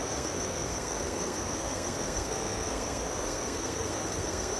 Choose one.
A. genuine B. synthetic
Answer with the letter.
B